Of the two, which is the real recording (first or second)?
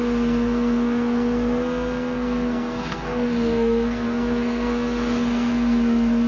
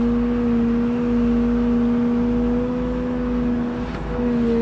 second